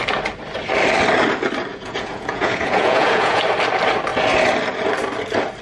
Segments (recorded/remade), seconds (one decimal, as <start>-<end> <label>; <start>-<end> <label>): 0.0-1.7 recorded; 1.7-3.4 remade; 3.4-5.6 recorded